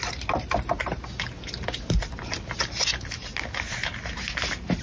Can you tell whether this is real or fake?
real